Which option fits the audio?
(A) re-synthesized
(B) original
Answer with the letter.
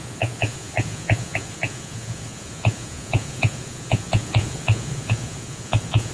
A